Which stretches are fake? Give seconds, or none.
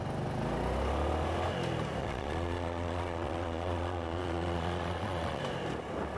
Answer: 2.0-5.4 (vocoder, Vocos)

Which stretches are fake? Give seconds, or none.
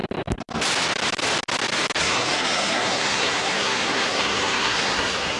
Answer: 2.0-5.4 (codec, SNAC)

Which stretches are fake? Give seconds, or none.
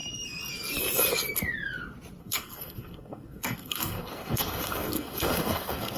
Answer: 2.2-6.0 (codec, SNAC)